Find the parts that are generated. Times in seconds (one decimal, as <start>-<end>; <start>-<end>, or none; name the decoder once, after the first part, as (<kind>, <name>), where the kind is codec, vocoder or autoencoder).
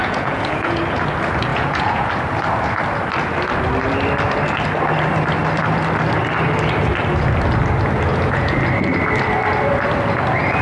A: 0.0-0.8 (vocoder, Vocos); 1.5-2.1; 8.1-8.6